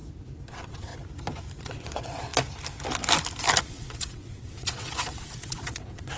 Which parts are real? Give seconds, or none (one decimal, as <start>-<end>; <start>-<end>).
0.0-0.5; 0.9-1.6; 2.3-3.7